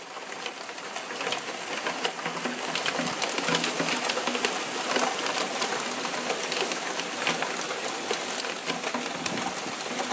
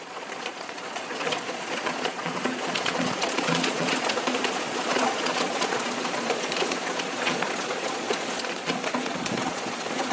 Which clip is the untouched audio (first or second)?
first